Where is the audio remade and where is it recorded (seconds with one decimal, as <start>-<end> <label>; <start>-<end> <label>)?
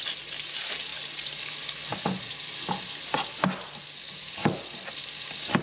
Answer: 0.0-5.6 recorded